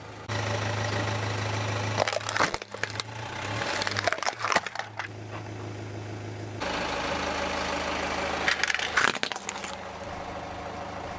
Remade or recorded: recorded